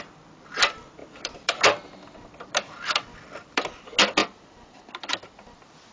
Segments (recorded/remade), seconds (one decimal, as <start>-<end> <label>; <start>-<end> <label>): 0.0-1.0 recorded; 1.0-3.8 remade; 3.8-4.2 recorded; 4.2-5.9 remade